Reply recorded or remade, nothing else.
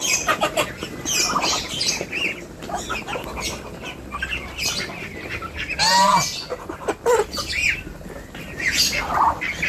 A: recorded